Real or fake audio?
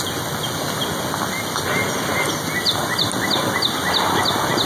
real